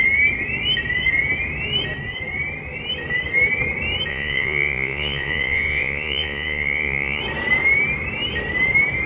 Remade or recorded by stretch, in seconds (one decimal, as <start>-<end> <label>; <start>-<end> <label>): 0.0-4.1 recorded; 4.1-7.2 remade; 7.2-9.1 recorded